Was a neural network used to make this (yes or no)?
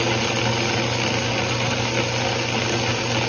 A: no